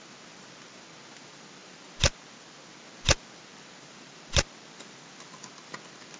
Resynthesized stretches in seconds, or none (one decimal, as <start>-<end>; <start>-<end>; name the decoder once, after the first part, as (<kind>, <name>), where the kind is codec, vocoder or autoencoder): none